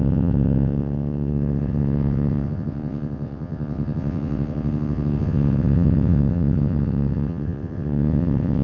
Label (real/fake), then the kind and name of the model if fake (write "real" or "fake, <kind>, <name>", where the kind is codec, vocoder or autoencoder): fake, vocoder, WaveNeXt